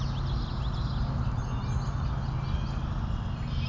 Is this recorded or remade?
recorded